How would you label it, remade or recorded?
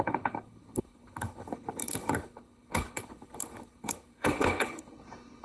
remade